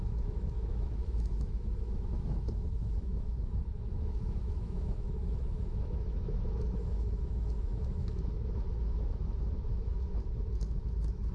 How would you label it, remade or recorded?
remade